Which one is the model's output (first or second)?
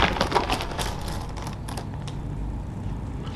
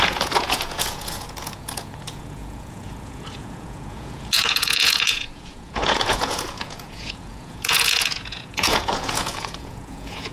second